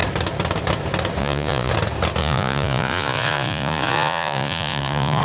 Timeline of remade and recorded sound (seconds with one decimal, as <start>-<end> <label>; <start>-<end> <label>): 0.0-1.2 recorded; 1.2-1.7 remade; 1.7-2.2 recorded; 2.2-5.2 remade